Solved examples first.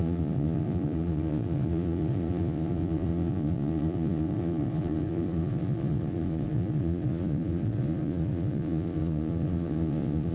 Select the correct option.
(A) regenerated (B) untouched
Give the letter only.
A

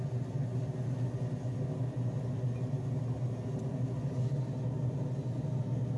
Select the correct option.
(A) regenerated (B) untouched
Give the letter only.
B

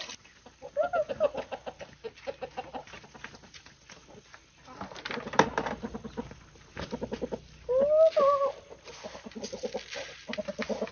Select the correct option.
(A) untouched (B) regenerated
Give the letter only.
A